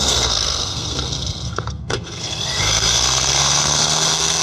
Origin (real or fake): fake